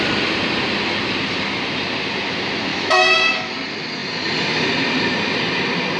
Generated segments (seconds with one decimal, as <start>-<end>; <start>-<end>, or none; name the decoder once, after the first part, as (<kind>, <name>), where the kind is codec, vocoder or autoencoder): 2.7-3.5 (autoencoder, DAC-VAE)